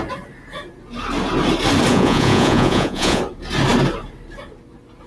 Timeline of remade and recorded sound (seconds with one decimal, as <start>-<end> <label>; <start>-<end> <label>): 0.0-1.9 recorded; 1.9-3.2 remade; 3.2-5.1 recorded